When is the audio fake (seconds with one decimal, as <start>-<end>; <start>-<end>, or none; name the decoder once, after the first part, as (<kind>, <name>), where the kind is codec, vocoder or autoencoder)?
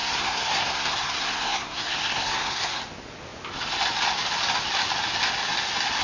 0.0-2.8 (codec, SNAC)